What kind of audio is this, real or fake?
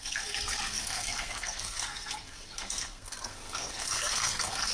fake